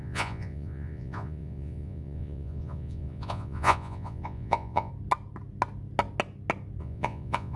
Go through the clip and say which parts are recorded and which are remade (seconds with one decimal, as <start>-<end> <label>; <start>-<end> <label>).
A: 0.0-4.9 remade; 4.9-6.8 recorded; 6.8-7.6 remade